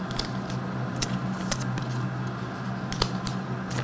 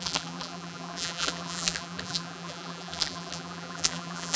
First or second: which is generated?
second